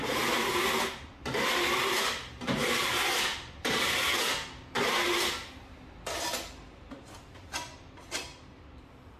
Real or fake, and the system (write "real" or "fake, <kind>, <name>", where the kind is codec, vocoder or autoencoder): real